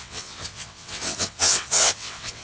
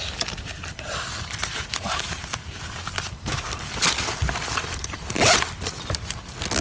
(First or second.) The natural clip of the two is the second